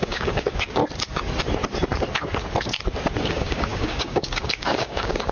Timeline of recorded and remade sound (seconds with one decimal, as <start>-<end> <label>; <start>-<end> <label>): 0.0-0.8 remade; 0.8-3.2 recorded; 3.2-5.3 remade